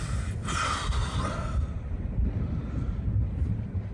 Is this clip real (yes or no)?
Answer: yes